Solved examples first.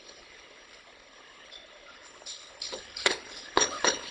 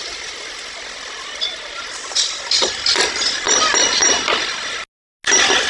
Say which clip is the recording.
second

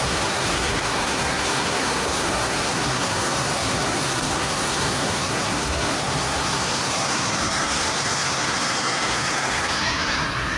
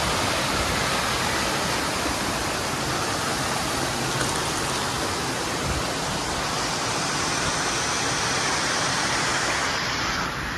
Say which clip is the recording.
second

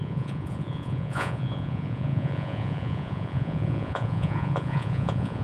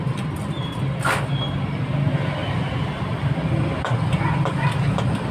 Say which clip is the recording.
second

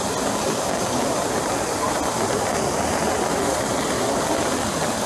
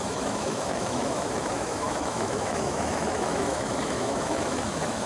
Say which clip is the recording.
first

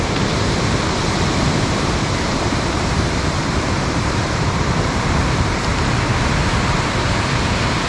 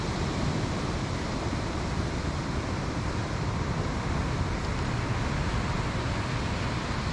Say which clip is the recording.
second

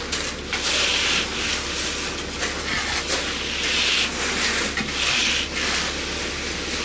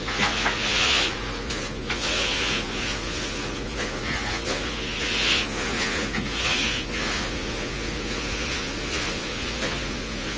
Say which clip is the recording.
first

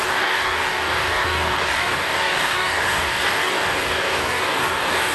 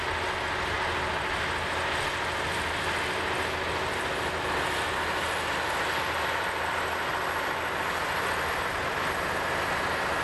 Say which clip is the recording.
second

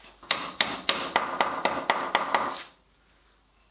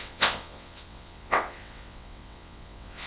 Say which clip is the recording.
first